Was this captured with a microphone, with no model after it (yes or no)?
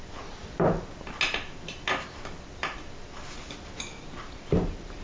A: yes